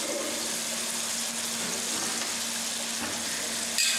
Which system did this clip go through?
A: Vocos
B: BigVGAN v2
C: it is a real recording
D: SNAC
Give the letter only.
C